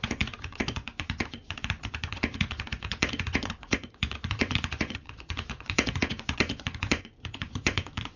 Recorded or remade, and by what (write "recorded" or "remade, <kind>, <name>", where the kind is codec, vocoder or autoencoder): remade, vocoder, Vocos